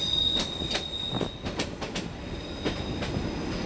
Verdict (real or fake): real